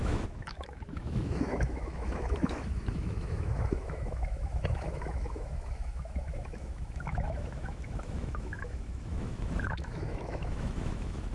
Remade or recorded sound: remade